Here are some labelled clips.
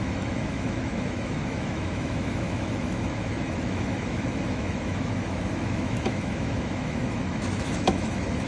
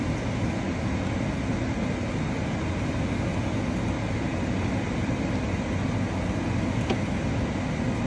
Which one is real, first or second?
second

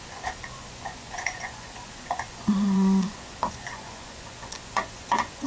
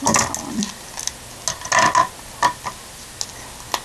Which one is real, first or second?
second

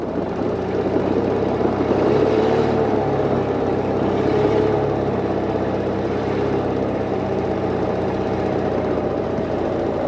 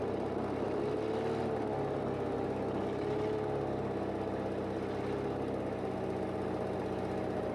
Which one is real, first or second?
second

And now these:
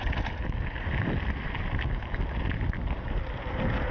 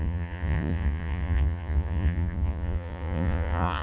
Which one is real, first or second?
first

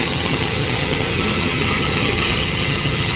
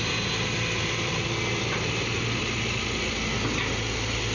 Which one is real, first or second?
second